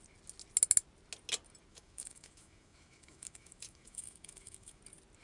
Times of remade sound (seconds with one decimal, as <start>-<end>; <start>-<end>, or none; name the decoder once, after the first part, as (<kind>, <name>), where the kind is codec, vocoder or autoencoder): 1.7-4.8 (autoencoder, DAC-VAE)